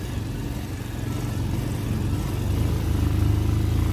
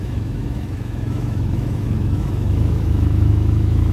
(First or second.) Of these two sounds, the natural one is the first